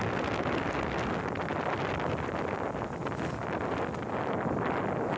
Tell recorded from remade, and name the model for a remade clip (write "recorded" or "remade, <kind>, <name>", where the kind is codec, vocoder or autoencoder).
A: recorded